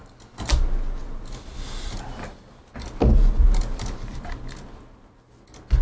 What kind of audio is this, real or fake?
real